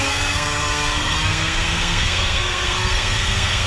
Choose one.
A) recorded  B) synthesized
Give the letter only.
B